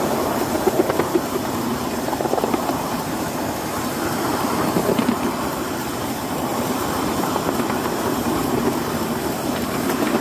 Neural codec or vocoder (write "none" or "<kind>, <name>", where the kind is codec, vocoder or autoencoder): none